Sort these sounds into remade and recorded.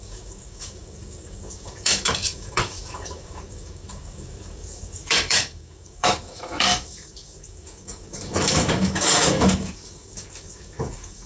remade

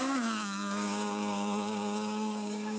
remade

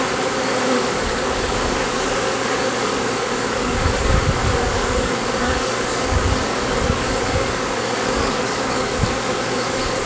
remade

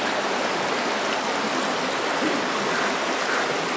recorded